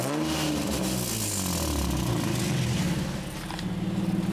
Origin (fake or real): real